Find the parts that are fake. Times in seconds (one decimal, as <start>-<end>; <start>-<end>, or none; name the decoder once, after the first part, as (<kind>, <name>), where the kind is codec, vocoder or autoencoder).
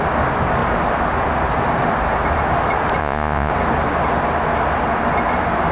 3.0-3.5 (vocoder, Vocos)